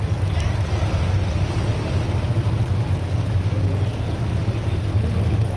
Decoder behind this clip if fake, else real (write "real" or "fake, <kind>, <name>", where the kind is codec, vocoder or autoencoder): real